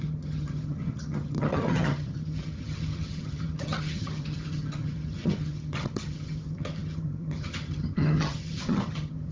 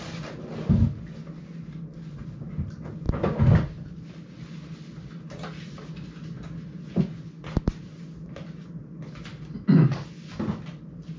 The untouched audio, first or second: second